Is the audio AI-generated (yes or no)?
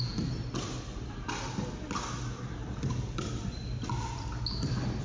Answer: no